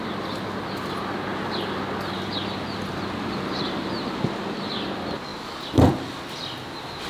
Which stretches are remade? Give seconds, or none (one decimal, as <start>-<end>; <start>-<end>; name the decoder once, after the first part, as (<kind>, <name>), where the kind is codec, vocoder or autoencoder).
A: none